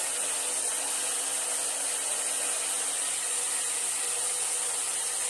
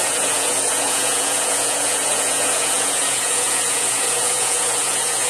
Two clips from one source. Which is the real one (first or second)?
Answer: first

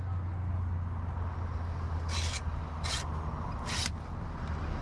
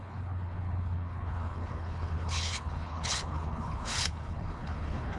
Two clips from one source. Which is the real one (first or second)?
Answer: first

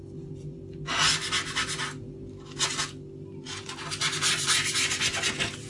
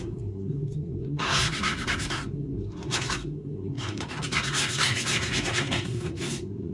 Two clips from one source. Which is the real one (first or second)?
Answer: first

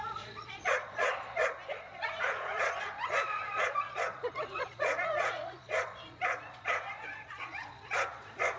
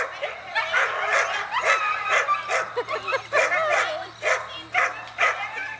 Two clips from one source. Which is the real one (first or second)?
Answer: second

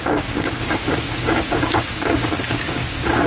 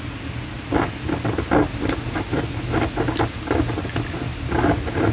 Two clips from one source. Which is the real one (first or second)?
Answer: second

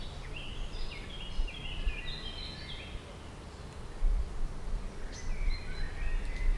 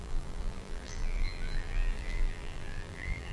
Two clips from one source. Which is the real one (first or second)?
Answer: first